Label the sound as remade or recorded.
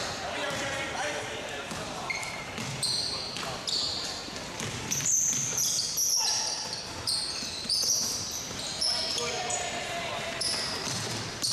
remade